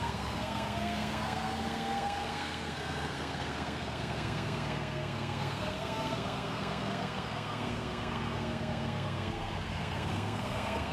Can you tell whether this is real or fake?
fake